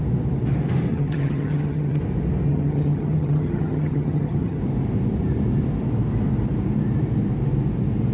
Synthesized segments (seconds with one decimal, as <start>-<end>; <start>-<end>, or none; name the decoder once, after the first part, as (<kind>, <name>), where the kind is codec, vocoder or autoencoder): 0.9-2.0 (vocoder, HiFi-GAN); 2.5-4.6